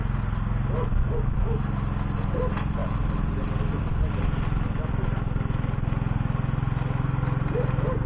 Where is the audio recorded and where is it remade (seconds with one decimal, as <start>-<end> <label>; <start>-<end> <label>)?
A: 0.0-8.1 recorded